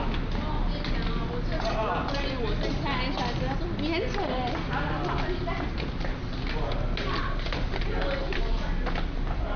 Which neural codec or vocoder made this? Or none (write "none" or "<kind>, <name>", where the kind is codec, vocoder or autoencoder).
none